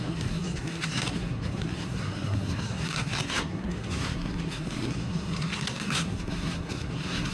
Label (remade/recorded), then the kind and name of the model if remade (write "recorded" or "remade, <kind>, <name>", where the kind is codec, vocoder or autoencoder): remade, codec, SNAC